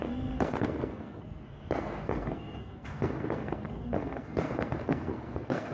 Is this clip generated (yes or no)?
yes